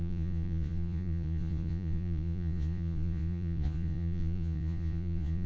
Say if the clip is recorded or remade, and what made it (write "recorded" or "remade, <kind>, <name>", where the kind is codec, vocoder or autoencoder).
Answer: remade, vocoder, Vocos